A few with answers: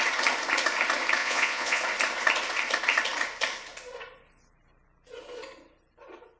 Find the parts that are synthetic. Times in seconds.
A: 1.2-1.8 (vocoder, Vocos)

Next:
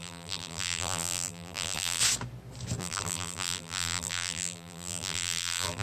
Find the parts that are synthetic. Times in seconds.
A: 0.0-2.0 (vocoder, BigVGAN v2); 2.8-5.8

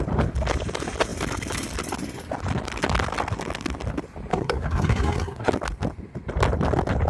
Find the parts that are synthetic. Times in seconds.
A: 4.3-5.5 (codec, SNAC)

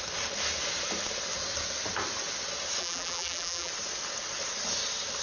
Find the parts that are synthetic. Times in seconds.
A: 2.8-3.7 (vocoder, BigVGAN v2)